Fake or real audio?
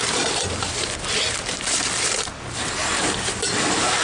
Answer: real